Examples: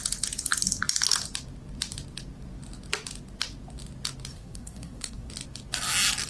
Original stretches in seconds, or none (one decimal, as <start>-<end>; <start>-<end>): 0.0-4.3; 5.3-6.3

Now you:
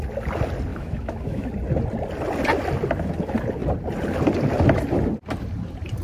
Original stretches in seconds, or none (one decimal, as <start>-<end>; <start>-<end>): 0.0-0.7; 1.5-6.0

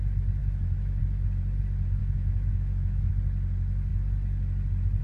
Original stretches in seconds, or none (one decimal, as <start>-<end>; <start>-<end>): 0.0-0.4; 1.0-2.0; 3.1-5.0